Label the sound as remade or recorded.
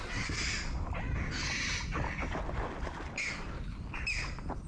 recorded